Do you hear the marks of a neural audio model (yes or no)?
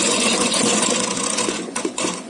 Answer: yes